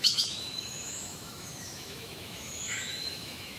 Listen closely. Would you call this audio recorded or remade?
remade